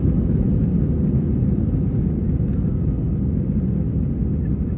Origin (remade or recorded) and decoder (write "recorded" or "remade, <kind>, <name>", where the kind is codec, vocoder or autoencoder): recorded